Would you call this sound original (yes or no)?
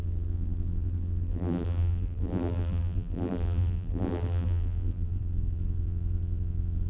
no